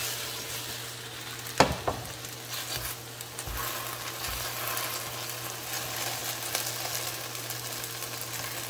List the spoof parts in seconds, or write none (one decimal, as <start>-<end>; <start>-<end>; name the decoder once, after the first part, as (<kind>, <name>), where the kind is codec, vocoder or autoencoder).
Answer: none